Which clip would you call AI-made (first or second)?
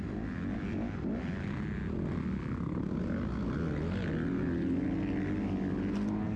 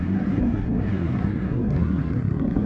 second